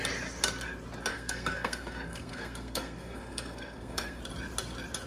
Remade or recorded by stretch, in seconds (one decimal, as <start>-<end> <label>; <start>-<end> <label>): 0.0-1.1 recorded; 1.1-4.2 remade; 4.2-5.1 recorded